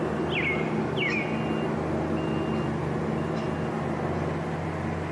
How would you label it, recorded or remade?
recorded